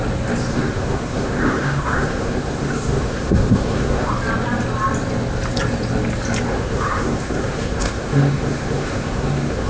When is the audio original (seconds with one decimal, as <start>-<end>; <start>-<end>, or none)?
0.0-0.5; 4.1-6.5